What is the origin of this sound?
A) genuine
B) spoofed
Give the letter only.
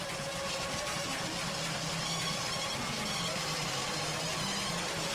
A